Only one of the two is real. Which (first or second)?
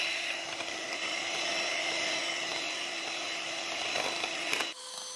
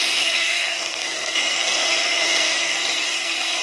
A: first